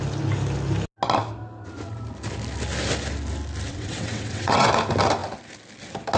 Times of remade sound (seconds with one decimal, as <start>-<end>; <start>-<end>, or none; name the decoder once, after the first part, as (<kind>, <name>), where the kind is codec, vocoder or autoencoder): 3.7-4.7 (vocoder, WaveNeXt)